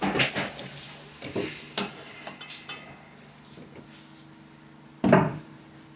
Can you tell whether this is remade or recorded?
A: recorded